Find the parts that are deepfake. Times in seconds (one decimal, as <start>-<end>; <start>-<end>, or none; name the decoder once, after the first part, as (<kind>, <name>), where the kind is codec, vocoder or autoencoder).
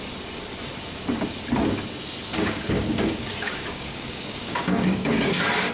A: 2.3-5.7 (codec, DAC)